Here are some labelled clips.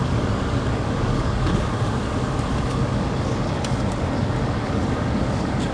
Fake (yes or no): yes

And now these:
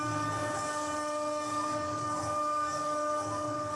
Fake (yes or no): yes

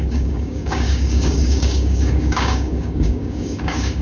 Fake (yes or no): yes